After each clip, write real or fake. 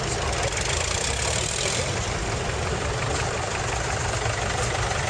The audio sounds real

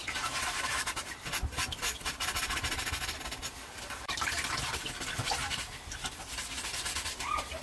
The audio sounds real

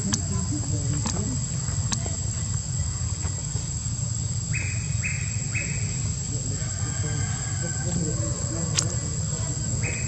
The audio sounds real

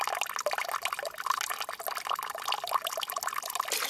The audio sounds real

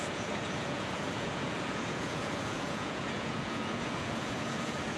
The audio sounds fake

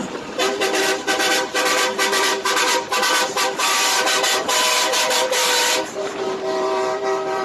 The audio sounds fake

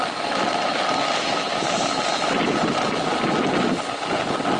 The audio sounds real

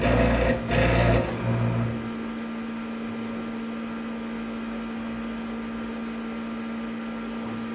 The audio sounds real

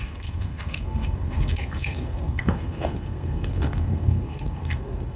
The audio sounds fake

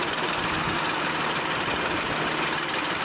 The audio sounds real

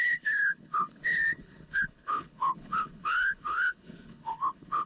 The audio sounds fake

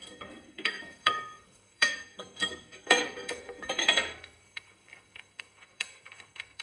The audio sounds fake